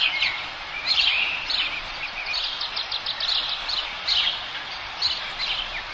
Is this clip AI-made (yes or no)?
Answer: no